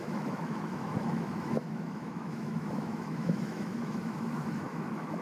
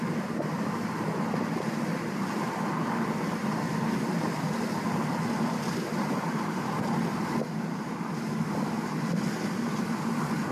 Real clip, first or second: second